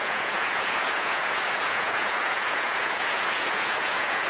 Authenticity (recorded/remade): remade